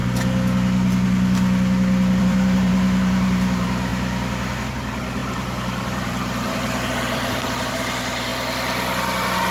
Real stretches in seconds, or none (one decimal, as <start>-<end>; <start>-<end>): 0.0-2.2; 3.9-4.7; 8.3-9.5